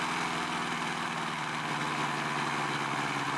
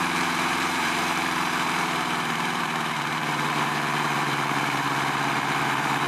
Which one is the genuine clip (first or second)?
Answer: first